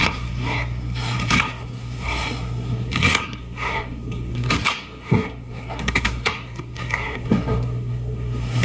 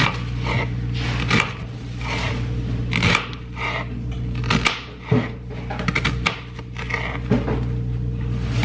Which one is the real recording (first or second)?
second